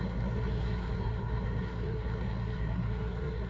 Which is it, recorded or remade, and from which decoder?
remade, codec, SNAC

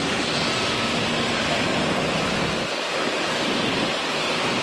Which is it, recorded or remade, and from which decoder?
recorded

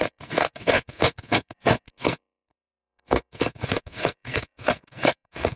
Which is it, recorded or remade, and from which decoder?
remade, codec, SNAC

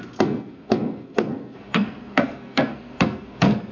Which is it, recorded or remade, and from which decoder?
remade, codec, SNAC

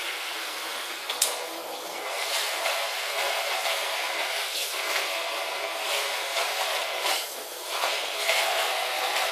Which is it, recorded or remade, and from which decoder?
remade, codec, SNAC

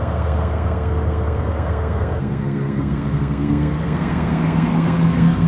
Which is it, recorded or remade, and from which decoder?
remade, codec, SNAC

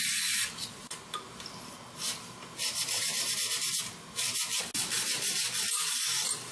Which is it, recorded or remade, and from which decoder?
recorded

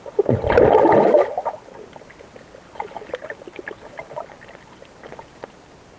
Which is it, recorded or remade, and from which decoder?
recorded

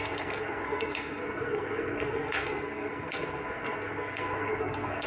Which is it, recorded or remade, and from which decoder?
remade, codec, SNAC